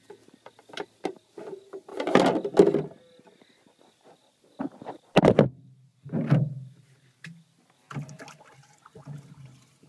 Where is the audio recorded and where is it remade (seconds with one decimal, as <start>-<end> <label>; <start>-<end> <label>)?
0.0-9.9 recorded

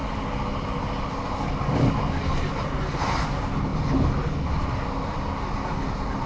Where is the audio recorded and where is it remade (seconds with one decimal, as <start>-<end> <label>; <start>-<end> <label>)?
0.0-6.3 recorded

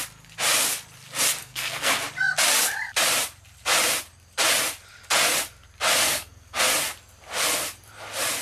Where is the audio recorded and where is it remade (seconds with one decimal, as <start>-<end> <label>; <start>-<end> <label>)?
0.0-1.4 recorded; 1.4-1.9 remade; 1.9-6.0 recorded; 6.0-6.6 remade; 6.6-8.4 recorded